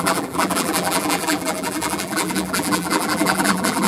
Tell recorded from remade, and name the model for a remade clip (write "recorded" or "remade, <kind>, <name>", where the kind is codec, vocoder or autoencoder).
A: remade, vocoder, BigVGAN v2